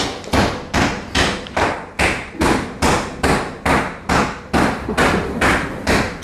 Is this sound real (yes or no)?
yes